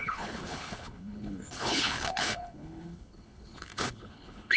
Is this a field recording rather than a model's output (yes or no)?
no